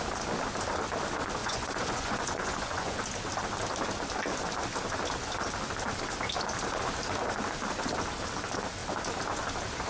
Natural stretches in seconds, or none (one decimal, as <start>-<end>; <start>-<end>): 0.0-1.4; 3.0-9.9